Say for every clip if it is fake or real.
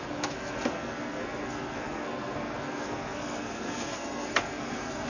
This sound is fake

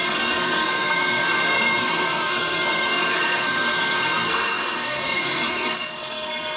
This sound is fake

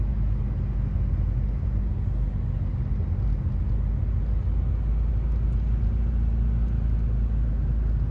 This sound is real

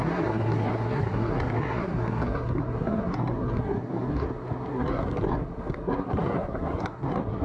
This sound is fake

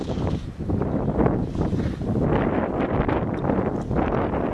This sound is real